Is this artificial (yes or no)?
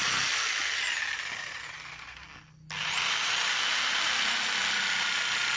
no